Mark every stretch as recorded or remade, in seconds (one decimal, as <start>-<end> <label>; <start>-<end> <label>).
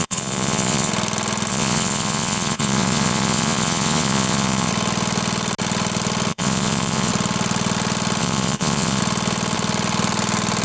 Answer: 0.0-0.9 remade; 0.9-1.5 recorded; 1.5-4.7 remade; 4.7-6.3 recorded; 6.3-7.1 remade; 7.1-8.2 recorded; 8.2-9.0 remade; 9.0-10.6 recorded